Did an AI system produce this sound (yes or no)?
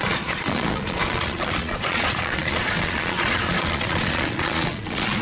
yes